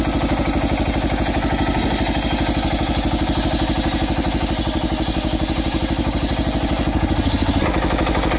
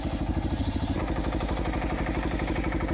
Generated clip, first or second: second